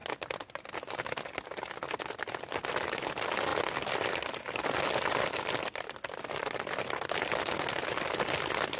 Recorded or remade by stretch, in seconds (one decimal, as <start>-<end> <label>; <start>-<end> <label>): 0.0-8.8 recorded